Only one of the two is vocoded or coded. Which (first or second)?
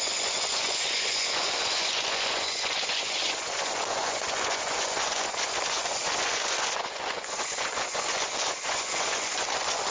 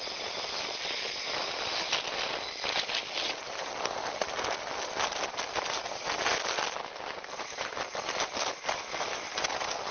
first